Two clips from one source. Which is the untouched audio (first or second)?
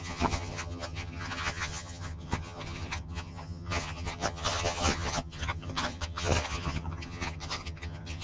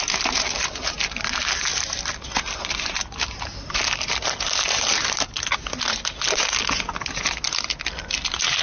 second